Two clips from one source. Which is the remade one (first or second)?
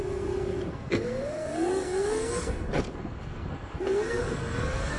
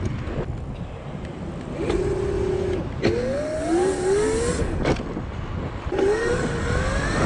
first